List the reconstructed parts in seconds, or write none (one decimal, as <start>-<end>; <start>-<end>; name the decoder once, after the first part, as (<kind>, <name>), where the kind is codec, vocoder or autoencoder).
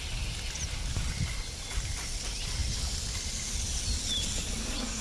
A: none